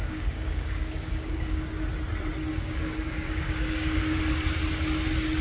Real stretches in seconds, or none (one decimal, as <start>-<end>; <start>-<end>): 1.7-2.5; 4.2-5.4